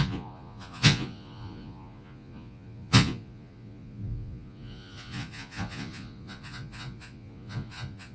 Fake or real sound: fake